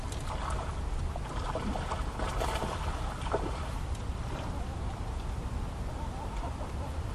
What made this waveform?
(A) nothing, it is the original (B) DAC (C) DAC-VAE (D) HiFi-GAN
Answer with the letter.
A